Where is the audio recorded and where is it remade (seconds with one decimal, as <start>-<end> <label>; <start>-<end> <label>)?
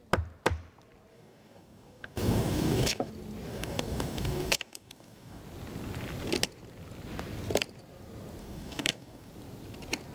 0.0-1.1 recorded; 1.1-3.1 remade; 3.1-3.5 recorded; 3.5-5.4 remade; 5.4-8.4 recorded; 8.4-9.3 remade; 9.3-10.1 recorded